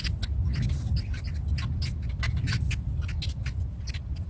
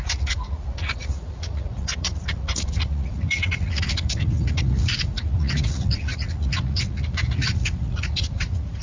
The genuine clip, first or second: first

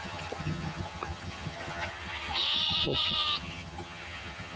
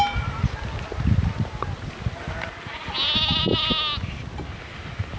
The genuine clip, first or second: second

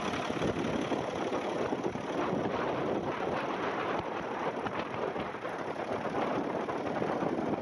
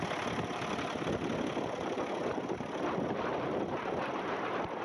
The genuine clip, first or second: first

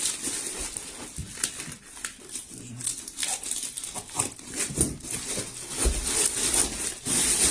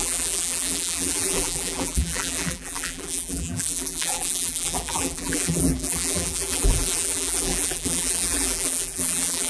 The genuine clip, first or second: first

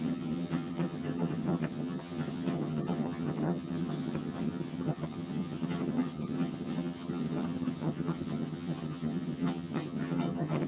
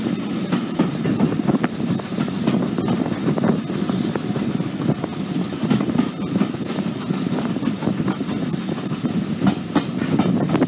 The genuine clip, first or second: second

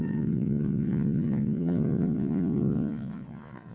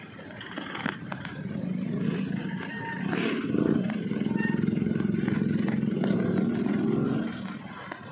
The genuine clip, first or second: second